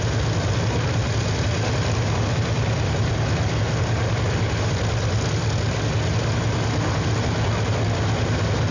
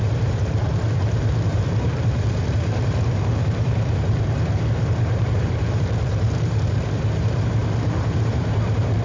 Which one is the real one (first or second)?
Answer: first